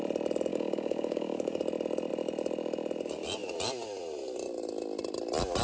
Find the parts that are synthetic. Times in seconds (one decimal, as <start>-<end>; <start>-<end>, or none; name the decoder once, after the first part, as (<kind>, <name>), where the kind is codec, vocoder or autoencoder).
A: 0.5-1.6 (codec, DAC)